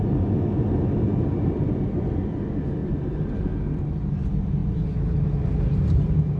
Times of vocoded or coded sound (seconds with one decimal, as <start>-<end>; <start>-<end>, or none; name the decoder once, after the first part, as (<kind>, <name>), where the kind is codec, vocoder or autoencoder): 2.8-3.4 (vocoder, BigVGAN v2)